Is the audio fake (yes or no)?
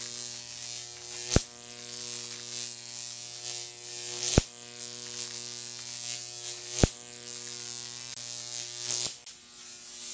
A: no